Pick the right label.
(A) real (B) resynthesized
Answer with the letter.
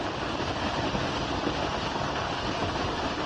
A